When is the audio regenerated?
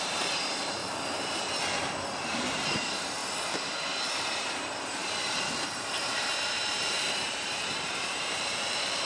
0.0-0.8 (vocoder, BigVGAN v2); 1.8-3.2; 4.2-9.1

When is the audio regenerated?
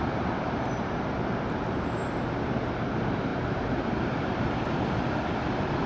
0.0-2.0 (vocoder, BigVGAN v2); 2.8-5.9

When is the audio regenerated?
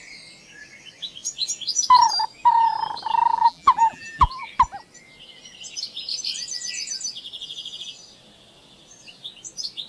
3.3-4.3 (vocoder, BigVGAN v2)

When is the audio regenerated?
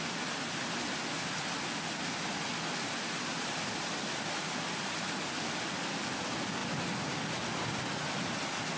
none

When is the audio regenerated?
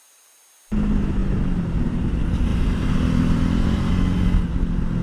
2.5-3.9 (vocoder, BigVGAN v2)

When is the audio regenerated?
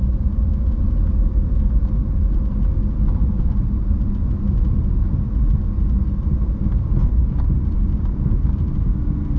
3.2-4.2 (vocoder, BigVGAN v2)